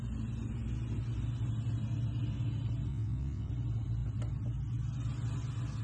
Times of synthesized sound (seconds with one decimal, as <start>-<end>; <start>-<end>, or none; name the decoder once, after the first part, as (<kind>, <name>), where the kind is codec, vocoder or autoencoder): 2.9-3.5 (vocoder, WaveNeXt)